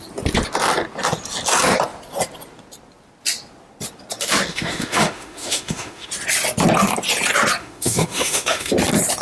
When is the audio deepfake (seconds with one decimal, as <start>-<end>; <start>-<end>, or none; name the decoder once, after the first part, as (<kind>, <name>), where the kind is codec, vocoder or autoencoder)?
4.5-6.1 (autoencoder, DAC-VAE); 7.6-8.7